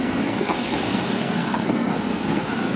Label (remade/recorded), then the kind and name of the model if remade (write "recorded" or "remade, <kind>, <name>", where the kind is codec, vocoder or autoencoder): remade, codec, SNAC